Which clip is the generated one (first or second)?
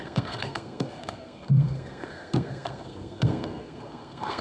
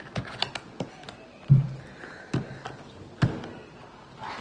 first